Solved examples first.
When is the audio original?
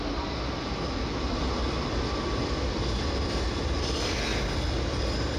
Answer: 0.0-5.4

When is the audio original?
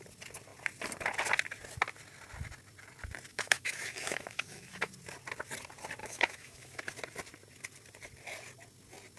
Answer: 0.0-3.3; 4.9-6.0; 6.8-9.2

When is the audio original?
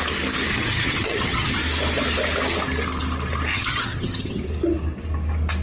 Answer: 0.0-0.5; 1.6-3.5; 4.4-5.6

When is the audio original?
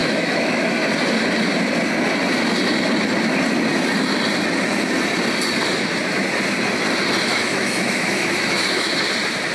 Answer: 0.7-7.3; 8.9-9.5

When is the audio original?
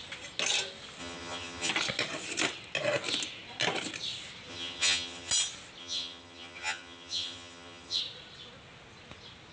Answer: 0.0-1.0; 1.7-4.5; 5.3-5.8; 8.0-9.5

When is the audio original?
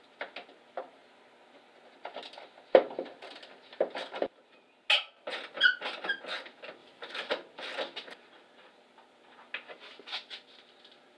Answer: 0.0-6.8; 7.3-11.2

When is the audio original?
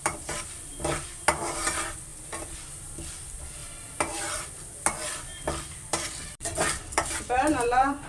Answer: 0.7-1.3